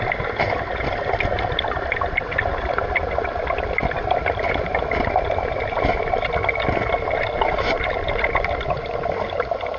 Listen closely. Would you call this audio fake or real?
real